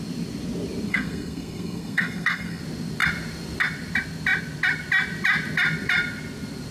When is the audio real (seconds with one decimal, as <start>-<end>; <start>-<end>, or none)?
0.0-0.9; 2.6-6.7